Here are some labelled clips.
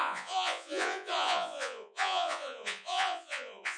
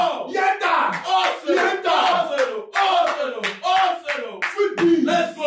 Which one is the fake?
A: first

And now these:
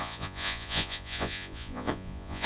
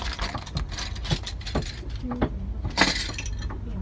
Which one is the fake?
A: first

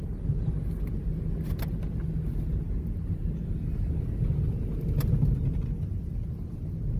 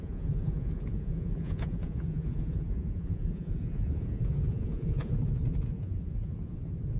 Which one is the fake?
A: second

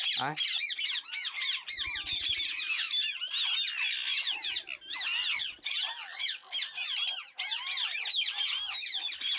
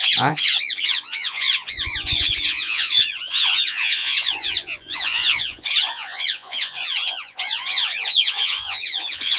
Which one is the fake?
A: second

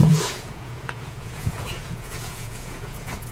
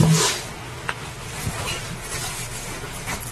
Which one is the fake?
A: first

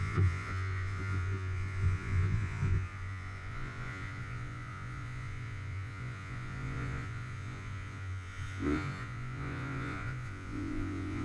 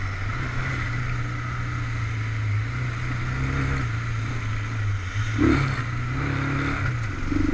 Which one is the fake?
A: first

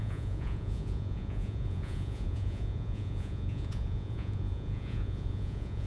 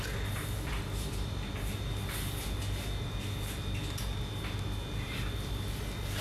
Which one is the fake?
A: first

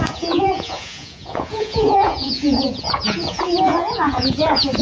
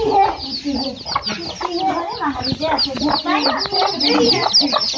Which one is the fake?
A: first